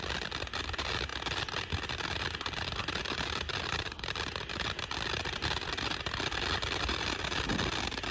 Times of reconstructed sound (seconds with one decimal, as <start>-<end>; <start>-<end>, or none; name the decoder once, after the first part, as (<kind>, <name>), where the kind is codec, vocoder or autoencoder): none